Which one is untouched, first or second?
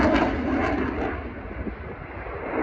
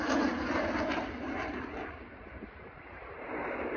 first